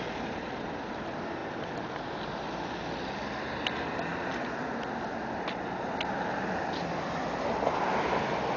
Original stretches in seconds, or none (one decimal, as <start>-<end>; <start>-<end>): 0.0-8.6